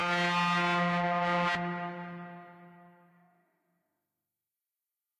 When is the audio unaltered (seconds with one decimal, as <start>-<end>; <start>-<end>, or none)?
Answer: 0.0-3.1